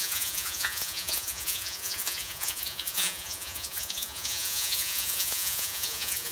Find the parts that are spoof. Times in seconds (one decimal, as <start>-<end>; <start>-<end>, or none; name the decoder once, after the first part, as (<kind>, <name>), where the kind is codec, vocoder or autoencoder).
0.0-6.3 (vocoder, Vocos)